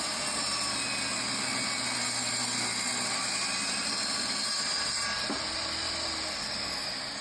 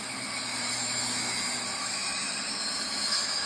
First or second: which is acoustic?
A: first